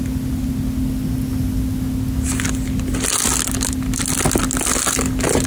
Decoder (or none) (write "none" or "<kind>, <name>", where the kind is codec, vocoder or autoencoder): none